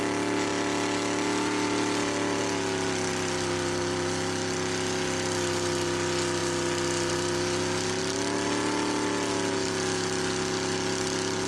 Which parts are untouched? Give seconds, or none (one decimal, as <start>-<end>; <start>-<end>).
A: 0.0-11.5